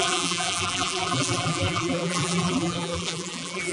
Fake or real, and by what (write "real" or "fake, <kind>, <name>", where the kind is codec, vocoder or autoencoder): fake, vocoder, BigVGAN v2